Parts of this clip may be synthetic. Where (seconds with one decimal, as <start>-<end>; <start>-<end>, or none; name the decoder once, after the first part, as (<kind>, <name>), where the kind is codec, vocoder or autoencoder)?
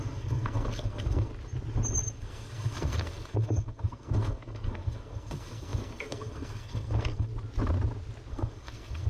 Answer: 0.0-1.3 (codec, SNAC); 2.2-7.3; 8.3-9.1